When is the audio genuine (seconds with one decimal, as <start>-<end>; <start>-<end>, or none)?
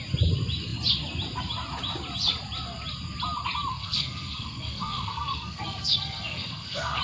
0.0-3.7